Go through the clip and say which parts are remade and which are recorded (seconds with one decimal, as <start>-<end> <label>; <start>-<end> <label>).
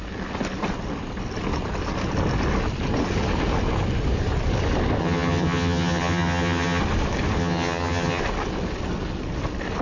0.0-5.0 recorded; 5.0-6.8 remade; 6.8-7.4 recorded; 7.4-8.2 remade; 8.2-9.8 recorded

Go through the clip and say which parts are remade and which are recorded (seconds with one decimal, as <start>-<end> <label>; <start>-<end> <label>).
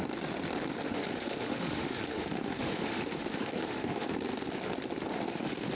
0.0-0.7 recorded; 0.7-4.1 remade; 4.1-5.1 recorded; 5.1-5.7 remade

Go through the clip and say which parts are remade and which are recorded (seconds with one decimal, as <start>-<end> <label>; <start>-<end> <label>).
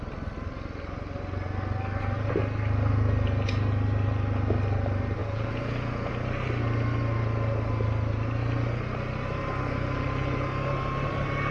0.0-5.2 recorded; 5.2-6.1 remade; 6.1-11.5 recorded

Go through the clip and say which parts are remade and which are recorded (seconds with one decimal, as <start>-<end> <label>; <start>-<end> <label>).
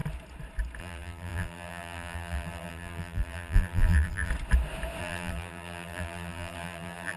0.0-0.8 recorded; 0.8-4.3 remade; 4.3-5.0 recorded; 5.0-7.2 remade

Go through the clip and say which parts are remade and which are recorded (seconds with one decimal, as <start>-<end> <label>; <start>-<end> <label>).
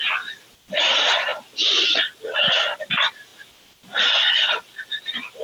0.0-5.4 recorded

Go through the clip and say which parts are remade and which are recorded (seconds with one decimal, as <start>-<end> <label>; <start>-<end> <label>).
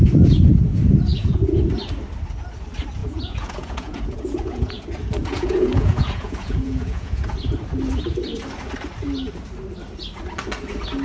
0.0-1.1 recorded; 1.1-1.7 remade; 1.7-3.0 recorded; 3.0-4.8 remade; 4.8-5.2 recorded; 5.2-7.2 remade; 7.2-11.0 recorded